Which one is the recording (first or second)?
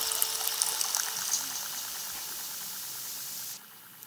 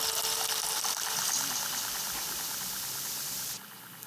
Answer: first